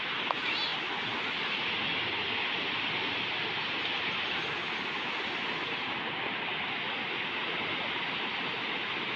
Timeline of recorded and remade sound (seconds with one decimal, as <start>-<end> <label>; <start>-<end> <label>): 0.0-9.2 recorded